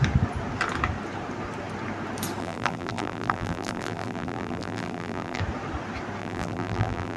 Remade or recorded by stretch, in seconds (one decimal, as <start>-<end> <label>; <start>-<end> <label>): 0.0-2.4 recorded; 2.4-5.4 remade; 5.4-6.2 recorded; 6.2-7.2 remade